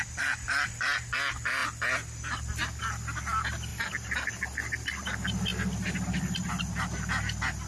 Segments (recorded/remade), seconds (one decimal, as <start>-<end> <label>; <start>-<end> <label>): 0.0-3.7 recorded; 3.7-4.3 remade; 4.3-7.7 recorded

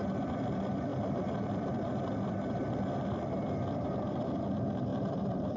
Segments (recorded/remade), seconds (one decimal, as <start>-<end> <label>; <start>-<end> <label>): 0.0-0.9 recorded; 0.9-4.3 remade; 4.3-4.9 recorded; 4.9-5.6 remade

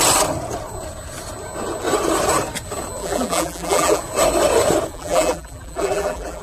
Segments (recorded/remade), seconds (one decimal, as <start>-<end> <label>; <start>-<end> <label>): 0.0-3.0 recorded; 3.0-4.0 remade; 4.0-4.9 recorded; 4.9-6.4 remade

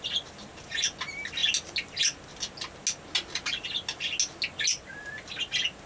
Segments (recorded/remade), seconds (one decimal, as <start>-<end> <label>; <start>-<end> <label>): 0.0-5.9 recorded

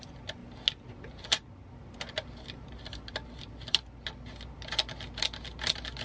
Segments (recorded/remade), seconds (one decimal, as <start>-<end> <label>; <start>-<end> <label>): 0.0-6.0 recorded

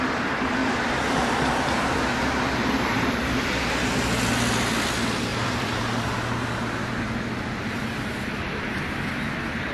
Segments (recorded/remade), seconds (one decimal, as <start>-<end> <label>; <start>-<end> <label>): 0.0-0.6 recorded; 0.6-2.0 remade; 2.0-2.6 recorded; 2.6-3.6 remade; 3.6-5.3 recorded; 5.3-6.3 remade; 6.3-9.7 recorded

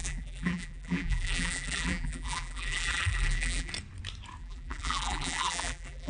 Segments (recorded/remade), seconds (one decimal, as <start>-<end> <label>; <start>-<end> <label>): 0.0-3.7 remade; 3.7-4.4 recorded; 4.4-6.1 remade